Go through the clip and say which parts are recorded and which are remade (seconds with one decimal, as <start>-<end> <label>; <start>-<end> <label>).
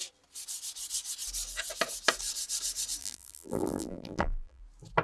0.0-3.0 recorded; 3.0-4.6 remade; 4.6-5.0 recorded